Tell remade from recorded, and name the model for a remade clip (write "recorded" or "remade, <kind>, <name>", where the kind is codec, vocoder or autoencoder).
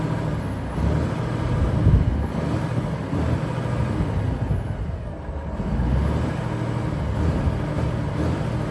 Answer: recorded